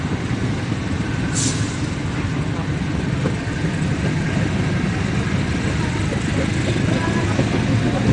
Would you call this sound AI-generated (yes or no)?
no